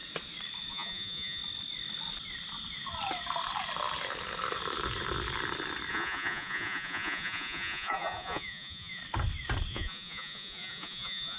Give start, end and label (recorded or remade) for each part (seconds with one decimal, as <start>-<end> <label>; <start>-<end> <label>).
0.0-0.7 recorded; 0.7-1.4 remade; 1.4-5.9 recorded; 5.9-9.0 remade; 9.0-9.7 recorded; 9.7-11.4 remade